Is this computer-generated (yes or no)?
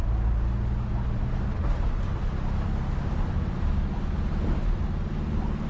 no